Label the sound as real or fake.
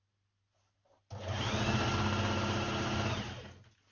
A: real